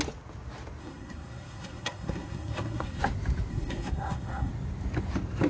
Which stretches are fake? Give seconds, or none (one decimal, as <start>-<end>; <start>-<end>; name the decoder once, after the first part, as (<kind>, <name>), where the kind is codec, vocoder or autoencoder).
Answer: 0.8-3.0 (codec, SNAC); 3.5-4.5